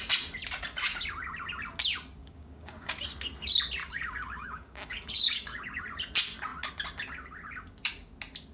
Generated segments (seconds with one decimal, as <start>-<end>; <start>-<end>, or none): 2.2-3.0; 3.8-5.8